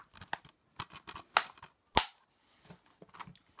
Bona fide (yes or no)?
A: yes